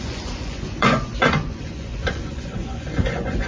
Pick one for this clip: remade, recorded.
remade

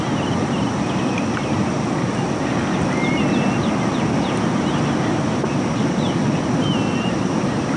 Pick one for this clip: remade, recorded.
recorded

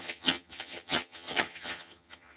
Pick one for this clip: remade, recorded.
remade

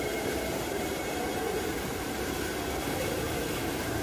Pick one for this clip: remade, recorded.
remade